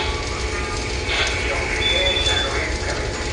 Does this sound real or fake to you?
real